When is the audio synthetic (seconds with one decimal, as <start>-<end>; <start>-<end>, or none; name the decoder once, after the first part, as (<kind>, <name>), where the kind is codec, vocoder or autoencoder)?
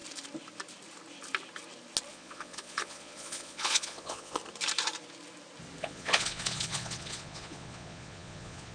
2.1-4.4 (vocoder, Vocos); 5.8-8.7